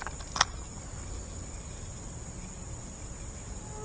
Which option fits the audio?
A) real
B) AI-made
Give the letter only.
A